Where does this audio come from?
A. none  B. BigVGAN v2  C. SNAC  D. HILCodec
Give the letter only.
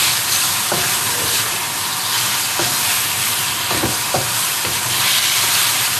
B